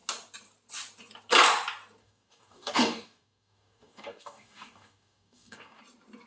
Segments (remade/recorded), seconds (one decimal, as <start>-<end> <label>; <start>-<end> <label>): 0.0-2.0 recorded; 2.0-5.8 remade; 5.8-6.3 recorded